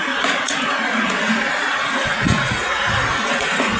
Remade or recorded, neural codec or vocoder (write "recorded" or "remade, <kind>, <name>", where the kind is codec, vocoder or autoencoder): remade, vocoder, Vocos